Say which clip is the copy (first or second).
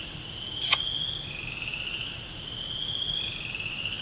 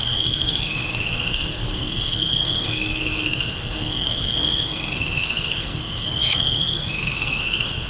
second